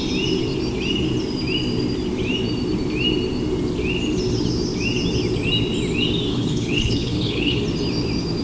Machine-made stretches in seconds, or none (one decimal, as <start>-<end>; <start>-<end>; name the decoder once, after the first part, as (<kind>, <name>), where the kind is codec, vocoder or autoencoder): 6.3-7.6 (codec, HILCodec)